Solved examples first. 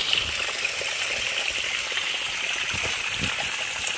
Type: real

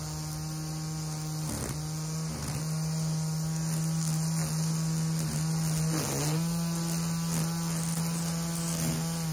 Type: real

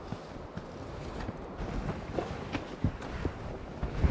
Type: real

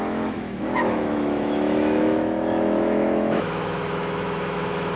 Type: fake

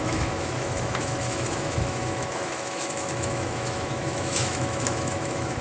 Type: fake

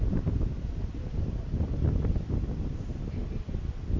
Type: real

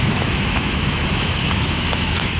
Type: fake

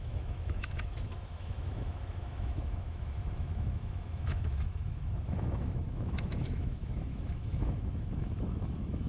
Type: fake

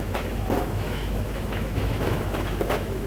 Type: fake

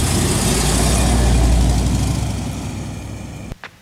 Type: real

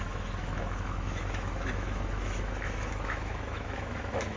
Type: fake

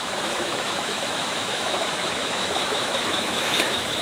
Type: fake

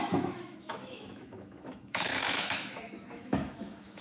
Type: fake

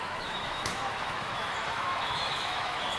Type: fake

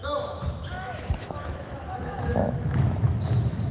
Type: fake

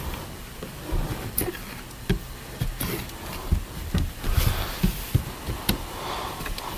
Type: real